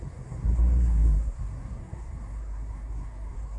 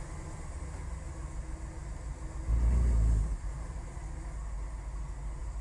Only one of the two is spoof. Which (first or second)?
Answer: first